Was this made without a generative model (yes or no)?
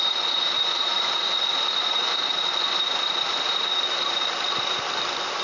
no